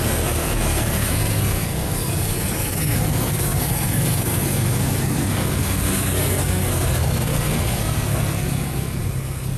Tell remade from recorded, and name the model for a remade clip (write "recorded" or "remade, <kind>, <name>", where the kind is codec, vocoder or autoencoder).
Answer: remade, codec, SNAC